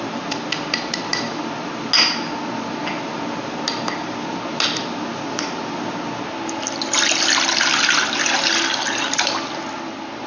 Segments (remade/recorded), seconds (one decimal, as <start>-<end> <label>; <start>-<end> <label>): 0.0-10.3 recorded